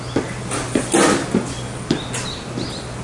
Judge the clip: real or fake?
real